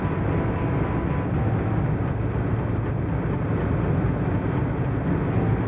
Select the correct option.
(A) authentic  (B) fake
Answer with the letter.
A